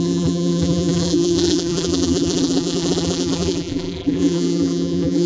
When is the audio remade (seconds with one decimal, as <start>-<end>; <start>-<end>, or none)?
0.0-5.3